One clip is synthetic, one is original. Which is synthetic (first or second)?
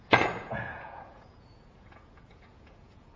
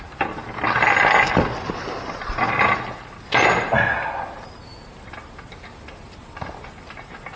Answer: first